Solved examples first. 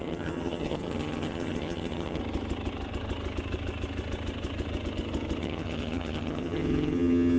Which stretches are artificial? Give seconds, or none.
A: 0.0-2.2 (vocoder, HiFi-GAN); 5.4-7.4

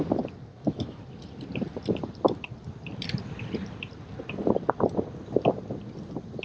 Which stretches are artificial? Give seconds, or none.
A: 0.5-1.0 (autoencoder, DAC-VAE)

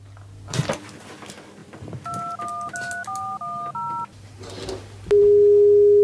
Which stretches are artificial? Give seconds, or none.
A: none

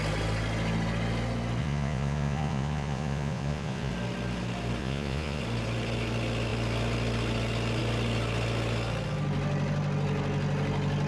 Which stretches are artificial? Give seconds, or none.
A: 1.6-3.9 (vocoder, Vocos); 4.8-5.4

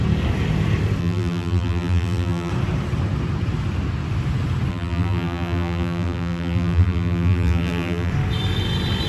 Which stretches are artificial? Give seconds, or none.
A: 1.0-2.5 (vocoder, BigVGAN v2); 4.7-8.1

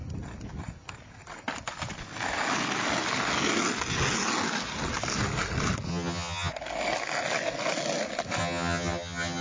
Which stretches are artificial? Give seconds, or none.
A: 5.9-6.5 (vocoder, HiFi-GAN); 8.4-9.4